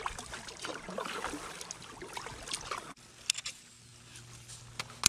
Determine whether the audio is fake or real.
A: real